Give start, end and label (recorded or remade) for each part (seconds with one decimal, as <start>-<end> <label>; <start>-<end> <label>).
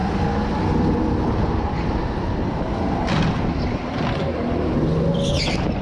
0.0-5.8 recorded